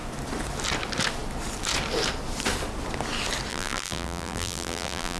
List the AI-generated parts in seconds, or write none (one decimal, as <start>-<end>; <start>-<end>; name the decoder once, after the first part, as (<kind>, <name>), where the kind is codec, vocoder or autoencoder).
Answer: 3.5-5.2 (vocoder, BigVGAN v2)